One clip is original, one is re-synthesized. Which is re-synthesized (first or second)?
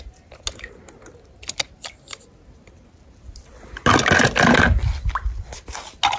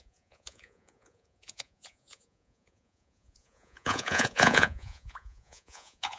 second